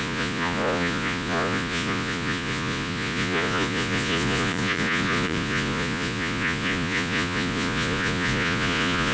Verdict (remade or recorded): remade